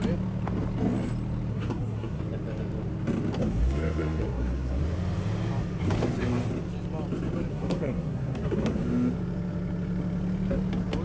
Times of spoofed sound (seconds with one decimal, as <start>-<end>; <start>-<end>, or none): 1.5-2.2; 3.4-4.8; 7.5-8.8